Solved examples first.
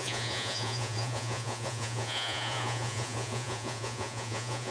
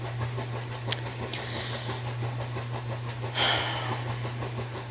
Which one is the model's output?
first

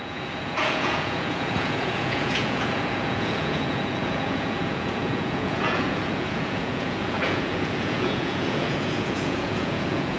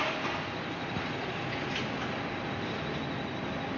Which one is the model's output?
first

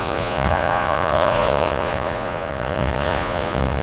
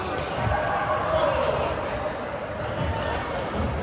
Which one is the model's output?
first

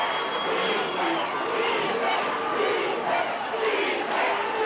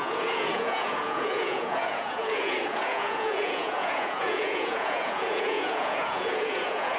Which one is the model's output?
second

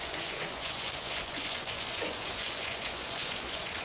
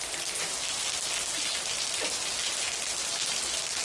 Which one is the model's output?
first